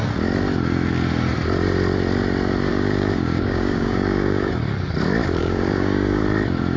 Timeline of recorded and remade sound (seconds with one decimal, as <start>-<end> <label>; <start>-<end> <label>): 0.0-2.7 recorded; 2.7-4.5 remade; 4.5-5.4 recorded; 5.4-6.2 remade; 6.2-6.8 recorded